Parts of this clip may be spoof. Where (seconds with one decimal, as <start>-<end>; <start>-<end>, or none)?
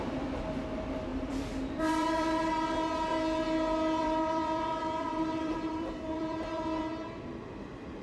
1.1-2.5; 4.0-6.8